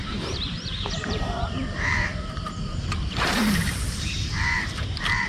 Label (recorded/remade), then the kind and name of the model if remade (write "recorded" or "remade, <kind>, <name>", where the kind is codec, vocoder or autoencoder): remade, vocoder, BigVGAN v2